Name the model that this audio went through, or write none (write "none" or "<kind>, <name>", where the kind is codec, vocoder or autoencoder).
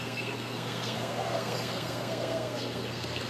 codec, SNAC